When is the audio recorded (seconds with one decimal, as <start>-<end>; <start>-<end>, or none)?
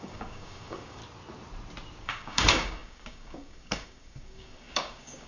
1.0-2.0